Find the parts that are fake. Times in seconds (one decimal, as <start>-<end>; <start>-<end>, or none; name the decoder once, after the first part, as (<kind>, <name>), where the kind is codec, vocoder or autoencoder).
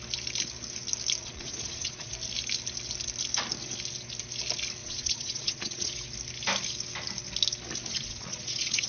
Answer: 1.2-2.1 (vocoder, Vocos); 4.8-5.9; 7.9-8.9